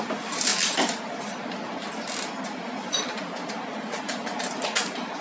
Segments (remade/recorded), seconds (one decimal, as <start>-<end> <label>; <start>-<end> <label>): 0.0-5.2 recorded